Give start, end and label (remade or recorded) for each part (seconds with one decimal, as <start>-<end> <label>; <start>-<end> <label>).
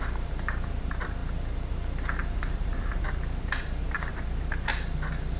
0.0-1.2 remade; 1.2-3.4 recorded; 3.4-4.7 remade; 4.7-5.4 recorded